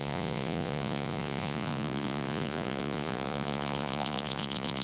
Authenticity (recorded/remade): remade